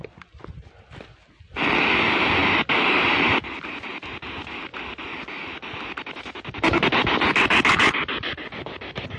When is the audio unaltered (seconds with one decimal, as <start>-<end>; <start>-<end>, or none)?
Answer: 0.0-9.2